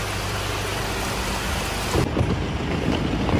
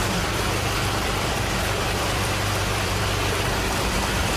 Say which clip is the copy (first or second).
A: second